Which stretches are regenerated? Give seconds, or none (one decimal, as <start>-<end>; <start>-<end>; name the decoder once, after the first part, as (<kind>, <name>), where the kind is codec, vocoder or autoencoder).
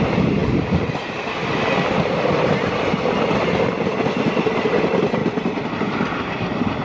0.4-3.7 (vocoder, BigVGAN v2); 5.2-5.7